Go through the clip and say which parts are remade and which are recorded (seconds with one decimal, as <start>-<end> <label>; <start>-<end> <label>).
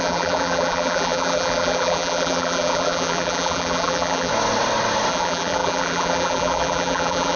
0.0-4.3 remade; 4.3-5.1 recorded; 5.1-7.4 remade